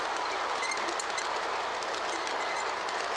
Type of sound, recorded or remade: recorded